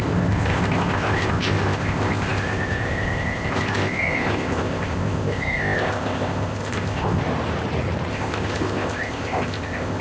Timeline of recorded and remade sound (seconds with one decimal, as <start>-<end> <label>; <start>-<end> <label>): 0.0-7.2 remade; 7.2-8.1 recorded; 8.1-10.0 remade